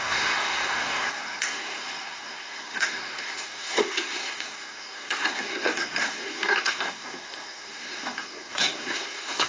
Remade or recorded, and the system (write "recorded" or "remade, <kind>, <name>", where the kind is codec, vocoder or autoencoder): remade, codec, SNAC